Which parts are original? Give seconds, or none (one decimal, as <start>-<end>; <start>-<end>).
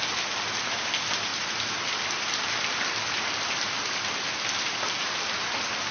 0.0-1.3; 4.8-5.9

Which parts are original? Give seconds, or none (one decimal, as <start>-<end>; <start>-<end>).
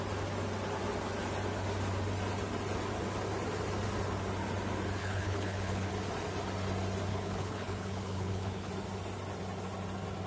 0.0-5.0; 5.9-7.1; 8.7-10.3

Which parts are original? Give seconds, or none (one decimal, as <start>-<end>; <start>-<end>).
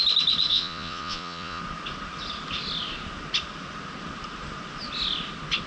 0.0-0.5; 1.6-5.7